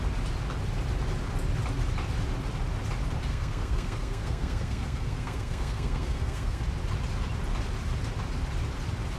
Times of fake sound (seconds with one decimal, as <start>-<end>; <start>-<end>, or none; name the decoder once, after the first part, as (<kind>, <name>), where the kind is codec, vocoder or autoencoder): 3.3-6.6 (codec, SNAC)